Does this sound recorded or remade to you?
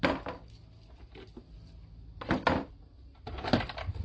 recorded